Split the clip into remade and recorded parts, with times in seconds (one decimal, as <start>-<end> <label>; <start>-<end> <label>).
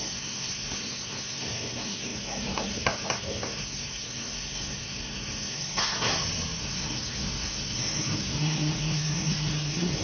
0.0-6.1 remade; 6.1-6.6 recorded; 6.6-10.0 remade